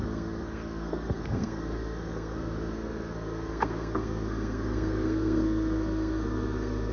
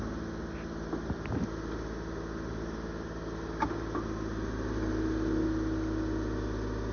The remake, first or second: first